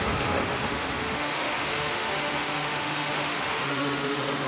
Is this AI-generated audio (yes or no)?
yes